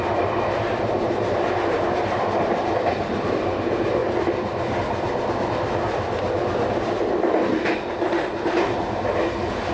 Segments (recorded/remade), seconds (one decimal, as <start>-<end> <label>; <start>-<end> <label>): 0.0-4.0 remade; 4.0-7.9 recorded; 7.9-9.7 remade